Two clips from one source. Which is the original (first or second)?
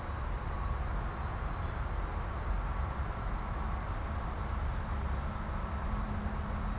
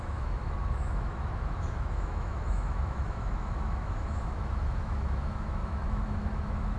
first